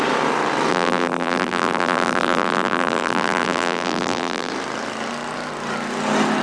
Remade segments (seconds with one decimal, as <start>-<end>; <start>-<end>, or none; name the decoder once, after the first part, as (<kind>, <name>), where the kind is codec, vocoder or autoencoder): 0.7-4.5 (vocoder, BigVGAN v2)

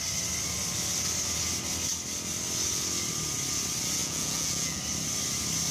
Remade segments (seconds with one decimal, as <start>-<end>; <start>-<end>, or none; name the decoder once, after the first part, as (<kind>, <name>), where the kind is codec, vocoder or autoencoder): 4.0-4.8 (vocoder, Vocos)

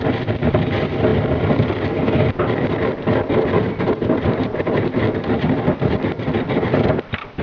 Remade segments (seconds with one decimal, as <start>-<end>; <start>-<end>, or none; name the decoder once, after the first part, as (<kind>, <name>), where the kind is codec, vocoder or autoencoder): 0.0-7.4 (vocoder, BigVGAN v2)

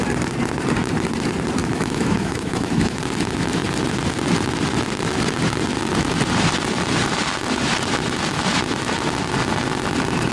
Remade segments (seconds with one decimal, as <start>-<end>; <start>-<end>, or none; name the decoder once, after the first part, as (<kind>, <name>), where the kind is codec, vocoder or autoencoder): 1.6-3.0 (autoencoder, DAC-VAE)

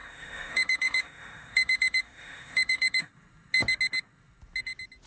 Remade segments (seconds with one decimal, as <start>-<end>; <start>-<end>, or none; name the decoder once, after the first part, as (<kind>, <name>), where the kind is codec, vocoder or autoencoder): 0.0-3.1 (autoencoder, DAC-VAE)

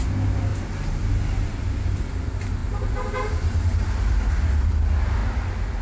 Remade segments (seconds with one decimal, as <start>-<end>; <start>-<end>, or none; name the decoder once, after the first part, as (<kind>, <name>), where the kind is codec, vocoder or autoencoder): 0.5-1.6 (vocoder, BigVGAN v2); 2.6-4.8

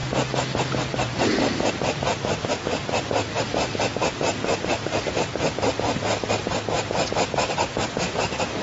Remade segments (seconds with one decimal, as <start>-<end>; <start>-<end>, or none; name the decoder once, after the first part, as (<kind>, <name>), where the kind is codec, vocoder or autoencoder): 4.6-5.3 (vocoder, BigVGAN v2)

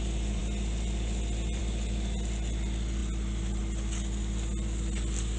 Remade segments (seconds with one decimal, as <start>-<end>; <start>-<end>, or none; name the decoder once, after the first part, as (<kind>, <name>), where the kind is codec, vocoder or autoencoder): none